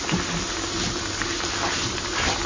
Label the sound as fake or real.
real